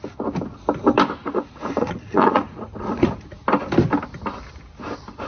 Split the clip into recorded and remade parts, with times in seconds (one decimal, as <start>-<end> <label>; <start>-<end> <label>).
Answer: 0.0-1.2 recorded; 1.2-3.4 remade; 3.4-5.3 recorded